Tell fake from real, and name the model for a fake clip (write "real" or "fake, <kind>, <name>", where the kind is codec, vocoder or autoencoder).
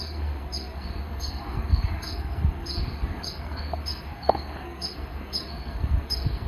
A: fake, codec, SNAC